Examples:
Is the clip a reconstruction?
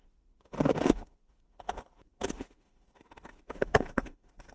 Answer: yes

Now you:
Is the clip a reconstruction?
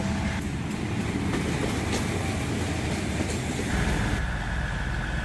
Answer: no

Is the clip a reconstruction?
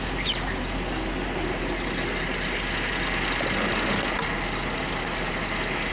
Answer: no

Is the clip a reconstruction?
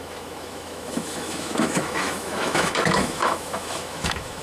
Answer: yes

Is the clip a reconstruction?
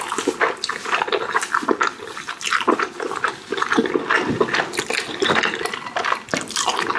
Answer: no